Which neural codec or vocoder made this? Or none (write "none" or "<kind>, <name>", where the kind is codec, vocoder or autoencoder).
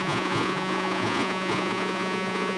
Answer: vocoder, Vocos